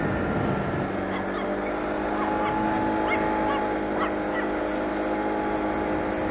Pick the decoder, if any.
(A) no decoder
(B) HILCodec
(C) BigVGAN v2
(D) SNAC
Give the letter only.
A